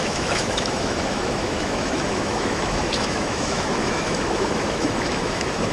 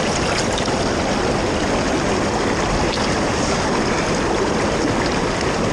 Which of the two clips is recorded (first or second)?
second